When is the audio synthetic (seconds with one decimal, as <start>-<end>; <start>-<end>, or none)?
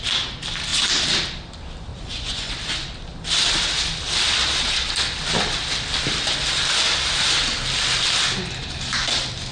1.9-2.5